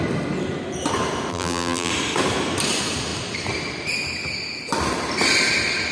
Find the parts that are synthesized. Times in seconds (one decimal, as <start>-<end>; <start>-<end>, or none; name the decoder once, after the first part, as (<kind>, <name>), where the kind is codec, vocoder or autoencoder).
1.3-1.9 (vocoder, BigVGAN v2)